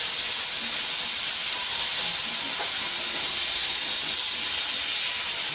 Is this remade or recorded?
recorded